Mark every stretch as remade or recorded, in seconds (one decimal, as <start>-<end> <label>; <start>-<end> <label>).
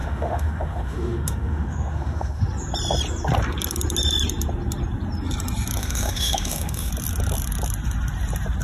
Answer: 0.0-2.4 remade; 2.4-5.8 recorded; 5.8-6.9 remade; 6.9-8.6 recorded